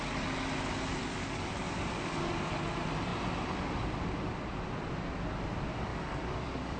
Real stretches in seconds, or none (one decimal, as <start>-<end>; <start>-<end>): 0.0-1.0; 2.5-5.9